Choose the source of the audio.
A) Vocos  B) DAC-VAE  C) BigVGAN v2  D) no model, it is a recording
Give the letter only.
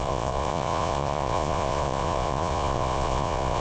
A